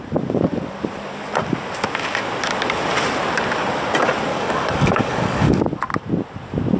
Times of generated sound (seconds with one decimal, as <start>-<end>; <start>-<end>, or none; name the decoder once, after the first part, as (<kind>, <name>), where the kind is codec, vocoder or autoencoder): 4.3-5.6 (codec, DAC)